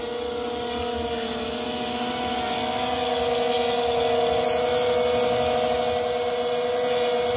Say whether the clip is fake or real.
real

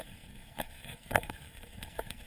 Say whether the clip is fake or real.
fake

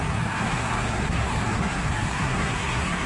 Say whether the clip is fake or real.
fake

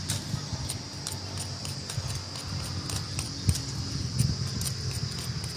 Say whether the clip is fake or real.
real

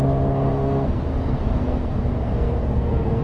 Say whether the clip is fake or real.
fake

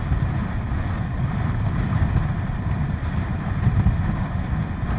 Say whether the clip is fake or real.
real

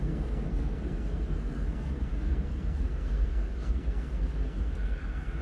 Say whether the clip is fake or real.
fake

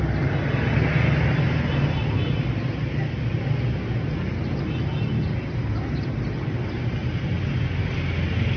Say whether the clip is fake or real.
real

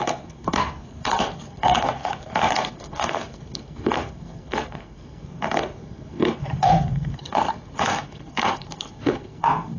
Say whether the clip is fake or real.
fake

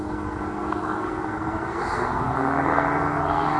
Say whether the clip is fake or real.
fake